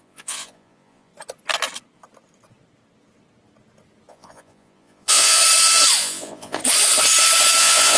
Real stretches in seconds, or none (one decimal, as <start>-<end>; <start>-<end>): 1.1-4.1; 5.4-6.0; 6.6-7.6